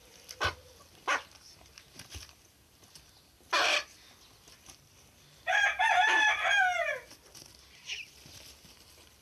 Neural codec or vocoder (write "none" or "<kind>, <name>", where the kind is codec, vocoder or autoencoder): none